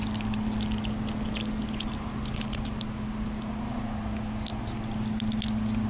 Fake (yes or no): no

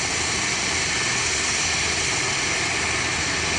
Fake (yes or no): yes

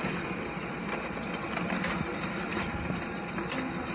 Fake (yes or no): no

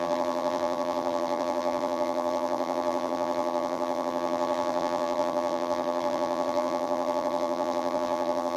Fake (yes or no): yes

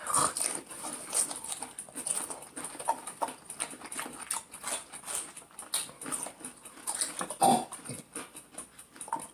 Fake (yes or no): no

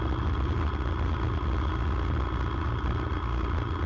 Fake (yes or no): no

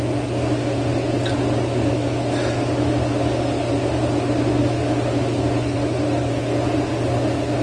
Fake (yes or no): no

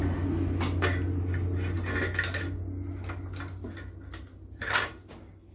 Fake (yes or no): no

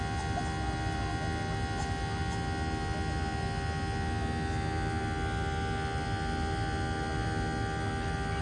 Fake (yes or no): no